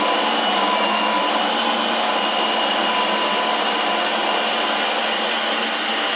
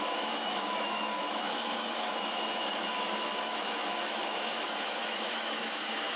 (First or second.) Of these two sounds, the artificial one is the second